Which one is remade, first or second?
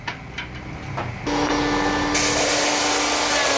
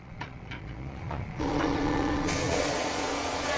second